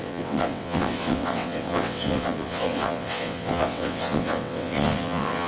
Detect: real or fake fake